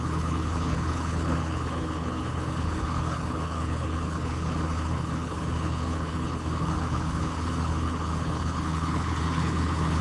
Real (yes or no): no